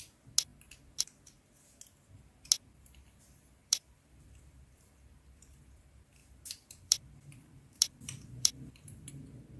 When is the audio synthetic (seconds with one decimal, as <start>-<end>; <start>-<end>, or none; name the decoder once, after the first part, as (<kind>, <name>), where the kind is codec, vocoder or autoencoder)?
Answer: 3.6-5.6 (vocoder, BigVGAN v2); 6.2-9.1